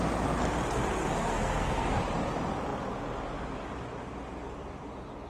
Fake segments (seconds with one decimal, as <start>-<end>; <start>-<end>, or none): 1.0-2.0